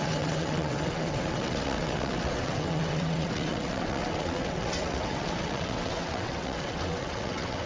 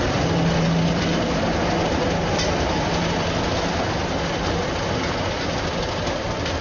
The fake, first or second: first